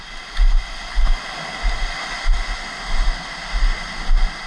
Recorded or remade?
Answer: recorded